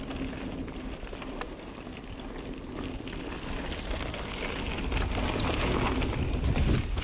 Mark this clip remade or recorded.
recorded